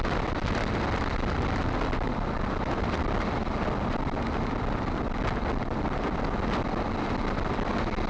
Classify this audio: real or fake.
real